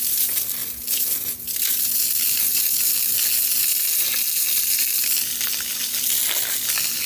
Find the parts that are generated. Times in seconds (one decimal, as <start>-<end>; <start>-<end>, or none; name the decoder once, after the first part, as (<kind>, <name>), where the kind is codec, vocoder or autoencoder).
none